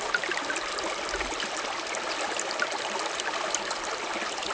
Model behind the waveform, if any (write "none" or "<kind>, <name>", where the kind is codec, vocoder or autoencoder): none